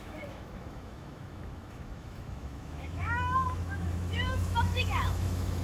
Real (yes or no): no